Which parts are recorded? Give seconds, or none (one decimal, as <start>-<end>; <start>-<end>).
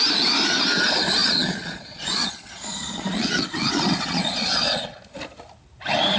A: 0.0-1.2; 4.9-6.2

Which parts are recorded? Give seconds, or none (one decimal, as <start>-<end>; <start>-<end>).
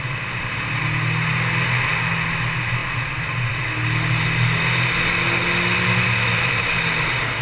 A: 0.0-7.4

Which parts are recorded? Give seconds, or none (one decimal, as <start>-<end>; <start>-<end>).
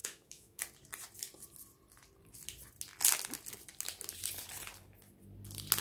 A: 0.6-5.8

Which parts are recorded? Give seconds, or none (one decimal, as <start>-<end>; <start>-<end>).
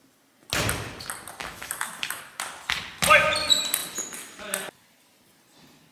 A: 0.0-1.4; 2.2-5.9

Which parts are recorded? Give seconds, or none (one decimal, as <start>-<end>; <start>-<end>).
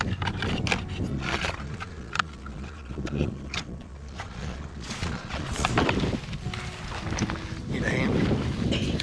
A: 0.0-1.1; 5.7-9.0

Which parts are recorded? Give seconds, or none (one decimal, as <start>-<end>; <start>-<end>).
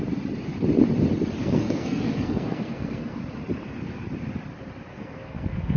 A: 0.0-1.4; 3.2-4.9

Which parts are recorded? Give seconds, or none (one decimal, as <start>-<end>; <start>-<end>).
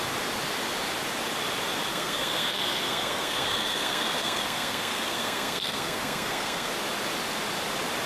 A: 0.0-1.9; 6.7-8.1